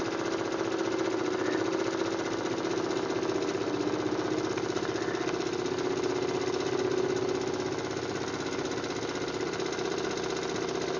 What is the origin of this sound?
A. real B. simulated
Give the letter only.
A